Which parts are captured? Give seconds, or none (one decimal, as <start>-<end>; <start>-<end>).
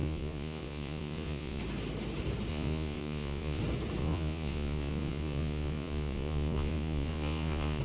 1.6-2.5; 3.6-4.0